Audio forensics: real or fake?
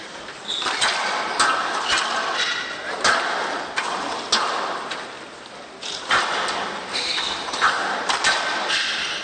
real